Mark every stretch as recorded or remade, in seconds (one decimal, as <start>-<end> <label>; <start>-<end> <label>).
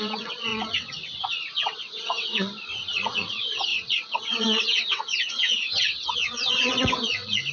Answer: 0.0-7.5 remade